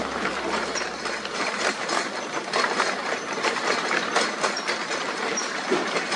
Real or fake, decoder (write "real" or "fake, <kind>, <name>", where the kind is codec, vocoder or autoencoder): fake, vocoder, BigVGAN v2